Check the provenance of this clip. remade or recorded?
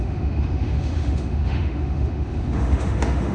remade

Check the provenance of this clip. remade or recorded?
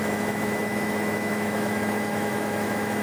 remade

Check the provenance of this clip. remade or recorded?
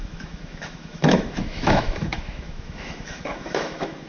remade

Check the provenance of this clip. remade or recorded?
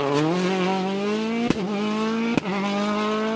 recorded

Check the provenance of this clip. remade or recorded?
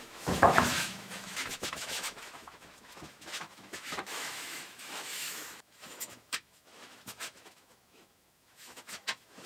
remade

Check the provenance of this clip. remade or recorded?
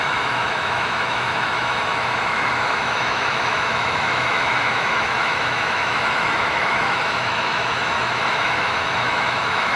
remade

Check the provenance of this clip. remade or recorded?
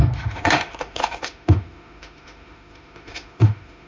remade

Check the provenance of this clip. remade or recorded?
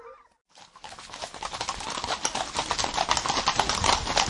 recorded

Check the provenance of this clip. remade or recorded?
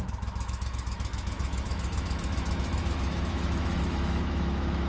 remade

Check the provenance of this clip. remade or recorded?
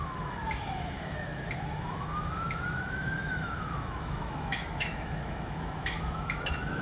remade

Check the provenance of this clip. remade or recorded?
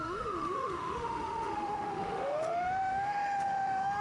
remade